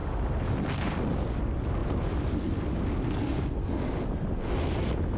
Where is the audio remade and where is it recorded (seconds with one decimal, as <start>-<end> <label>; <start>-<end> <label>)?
0.0-5.2 recorded